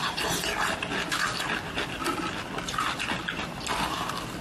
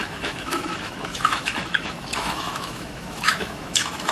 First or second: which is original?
first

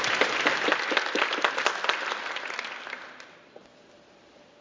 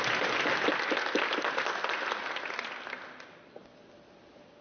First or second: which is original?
second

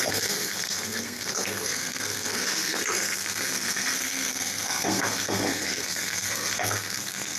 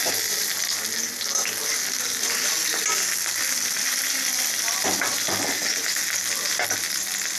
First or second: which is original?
second